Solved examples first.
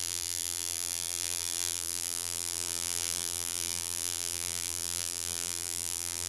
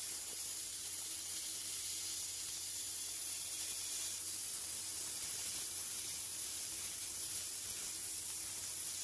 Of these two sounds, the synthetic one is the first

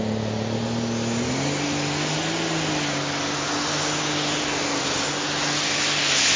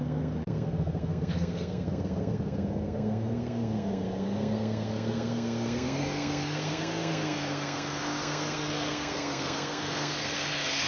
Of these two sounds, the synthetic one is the second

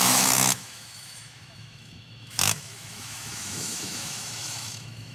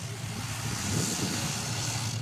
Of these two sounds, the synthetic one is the first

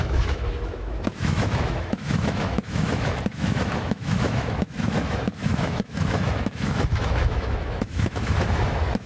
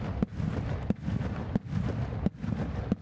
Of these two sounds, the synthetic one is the first